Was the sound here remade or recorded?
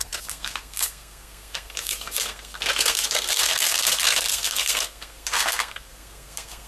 remade